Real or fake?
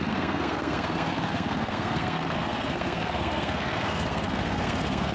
fake